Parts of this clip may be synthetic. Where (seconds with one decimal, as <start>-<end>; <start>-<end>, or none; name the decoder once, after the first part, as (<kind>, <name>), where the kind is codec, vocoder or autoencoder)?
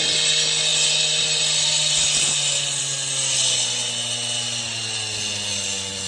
none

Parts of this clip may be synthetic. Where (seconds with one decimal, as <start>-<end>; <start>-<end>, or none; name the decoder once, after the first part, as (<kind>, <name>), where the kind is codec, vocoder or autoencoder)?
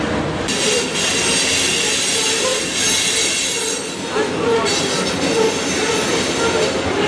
none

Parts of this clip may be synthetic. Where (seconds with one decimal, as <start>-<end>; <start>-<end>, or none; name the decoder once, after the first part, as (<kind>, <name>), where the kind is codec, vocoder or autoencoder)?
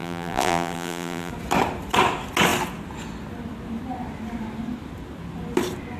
0.0-1.3 (vocoder, BigVGAN v2)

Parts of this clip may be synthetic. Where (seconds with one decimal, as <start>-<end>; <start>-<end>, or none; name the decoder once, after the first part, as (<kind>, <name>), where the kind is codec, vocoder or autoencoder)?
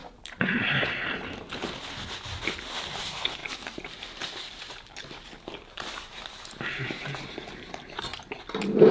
3.4-8.0 (vocoder, BigVGAN v2)